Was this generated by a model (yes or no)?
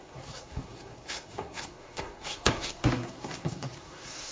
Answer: yes